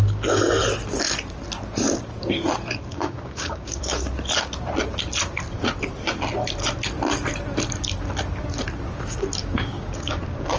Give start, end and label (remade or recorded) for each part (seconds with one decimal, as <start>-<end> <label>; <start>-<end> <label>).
0.0-2.9 recorded; 2.9-3.8 remade; 3.8-9.4 recorded; 9.4-10.2 remade; 10.2-10.6 recorded